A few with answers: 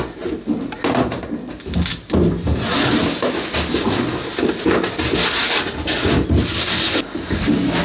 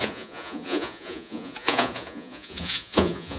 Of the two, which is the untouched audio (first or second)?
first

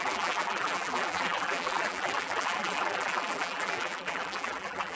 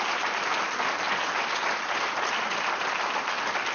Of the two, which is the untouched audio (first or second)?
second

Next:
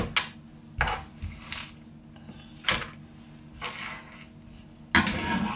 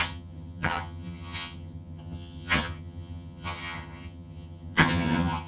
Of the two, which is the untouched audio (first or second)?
first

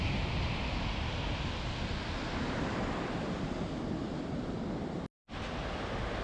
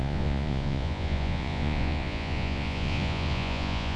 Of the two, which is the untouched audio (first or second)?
first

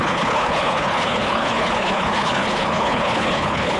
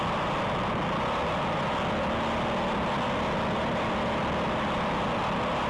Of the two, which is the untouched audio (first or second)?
second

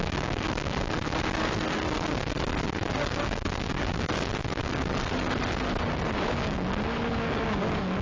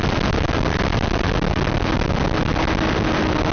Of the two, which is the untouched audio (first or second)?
second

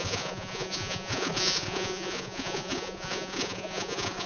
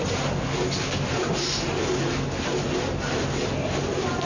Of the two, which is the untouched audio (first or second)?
second